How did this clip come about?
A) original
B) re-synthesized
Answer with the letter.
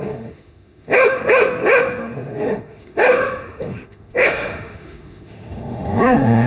B